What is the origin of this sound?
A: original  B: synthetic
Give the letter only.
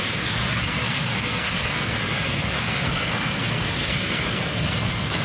B